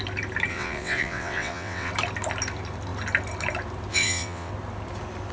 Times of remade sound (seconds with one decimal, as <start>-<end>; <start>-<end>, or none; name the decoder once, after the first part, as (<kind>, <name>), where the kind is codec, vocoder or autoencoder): 0.5-1.9 (vocoder, WaveNeXt); 3.9-4.5